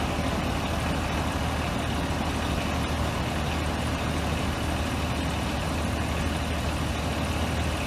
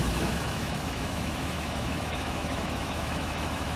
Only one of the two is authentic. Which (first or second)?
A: first